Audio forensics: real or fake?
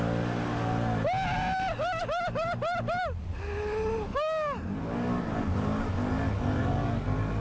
real